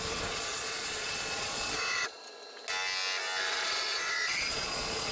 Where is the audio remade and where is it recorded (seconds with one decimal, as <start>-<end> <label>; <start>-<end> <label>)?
0.0-2.3 remade; 2.3-3.7 recorded; 3.7-5.1 remade